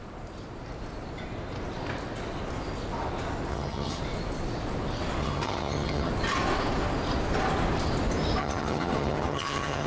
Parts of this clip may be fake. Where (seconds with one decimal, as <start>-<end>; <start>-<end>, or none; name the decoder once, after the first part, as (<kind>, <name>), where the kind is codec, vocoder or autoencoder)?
3.5-4.0 (vocoder, HiFi-GAN); 5.2-6.1; 8.4-9.9